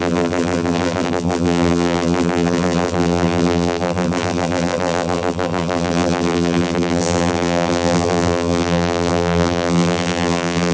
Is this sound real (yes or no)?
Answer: no